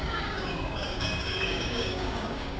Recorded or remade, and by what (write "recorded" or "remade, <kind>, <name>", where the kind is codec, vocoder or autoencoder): remade, codec, DAC